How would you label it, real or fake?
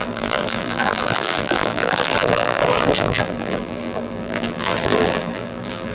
fake